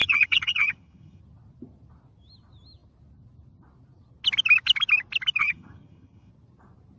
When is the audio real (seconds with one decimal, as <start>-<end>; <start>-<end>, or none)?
1.2-5.4; 6.3-7.0